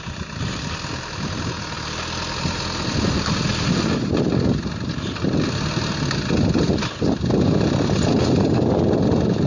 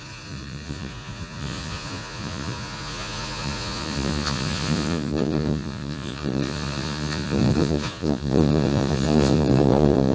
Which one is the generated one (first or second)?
second